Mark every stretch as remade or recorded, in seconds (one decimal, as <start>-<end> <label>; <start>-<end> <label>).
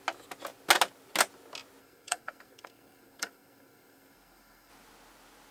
0.0-1.8 recorded; 1.8-4.7 remade; 4.7-5.5 recorded